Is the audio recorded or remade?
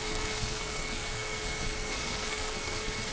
remade